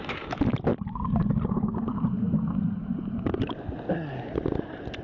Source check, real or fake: real